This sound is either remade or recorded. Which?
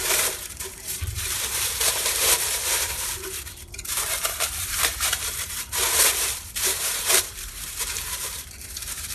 remade